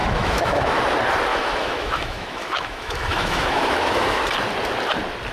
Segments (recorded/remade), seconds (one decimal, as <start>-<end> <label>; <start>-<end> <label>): 0.0-0.8 remade; 0.8-1.3 recorded; 1.3-4.2 remade; 4.2-5.3 recorded